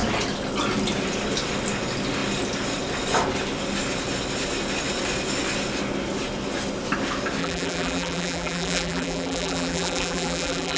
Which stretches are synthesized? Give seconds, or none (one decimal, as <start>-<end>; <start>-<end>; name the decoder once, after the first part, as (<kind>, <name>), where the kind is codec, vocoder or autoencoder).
7.4-10.8 (vocoder, BigVGAN v2)